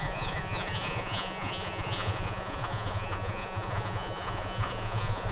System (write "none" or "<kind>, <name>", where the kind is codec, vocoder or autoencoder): vocoder, Vocos